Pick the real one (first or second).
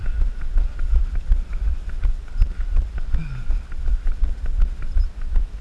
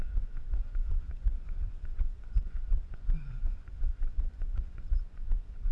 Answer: first